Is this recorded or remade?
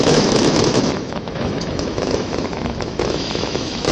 remade